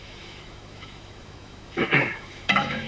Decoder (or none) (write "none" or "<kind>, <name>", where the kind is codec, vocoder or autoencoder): autoencoder, DAC-VAE